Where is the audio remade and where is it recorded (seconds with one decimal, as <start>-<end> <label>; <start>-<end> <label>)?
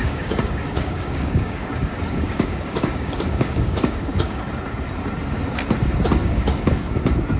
0.0-4.4 remade; 4.4-6.2 recorded; 6.2-6.9 remade; 6.9-7.4 recorded